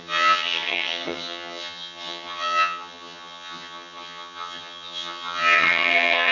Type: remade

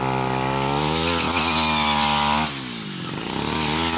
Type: recorded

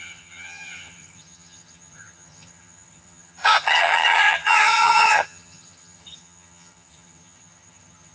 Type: remade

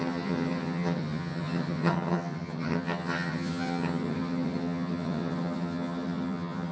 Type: remade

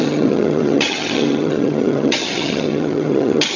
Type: remade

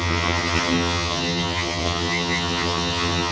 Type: remade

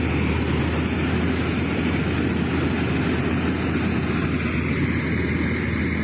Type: recorded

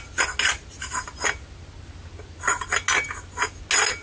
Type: recorded